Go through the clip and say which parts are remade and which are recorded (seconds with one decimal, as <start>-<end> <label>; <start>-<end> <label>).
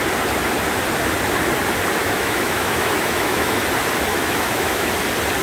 0.0-2.0 recorded; 2.0-3.6 remade; 3.6-4.1 recorded; 4.1-4.9 remade; 4.9-5.4 recorded